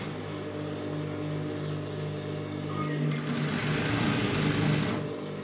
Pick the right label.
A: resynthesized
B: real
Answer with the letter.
B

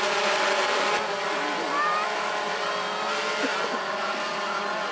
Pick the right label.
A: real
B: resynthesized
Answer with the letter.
A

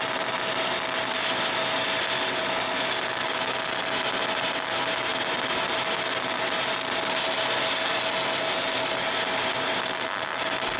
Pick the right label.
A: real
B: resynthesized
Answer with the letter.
A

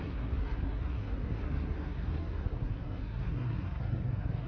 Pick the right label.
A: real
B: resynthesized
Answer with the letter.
B